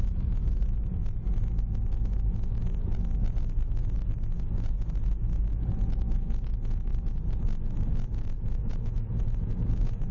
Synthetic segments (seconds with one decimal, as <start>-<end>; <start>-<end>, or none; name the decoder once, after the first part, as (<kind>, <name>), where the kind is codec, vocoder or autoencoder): 0.0-1.0 (vocoder, Vocos); 5.5-6.9; 8.5-10.1

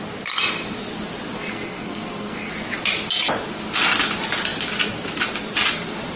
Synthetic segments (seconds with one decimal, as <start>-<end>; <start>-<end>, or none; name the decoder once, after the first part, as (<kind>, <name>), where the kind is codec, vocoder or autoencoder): 1.5-2.5 (codec, SNAC)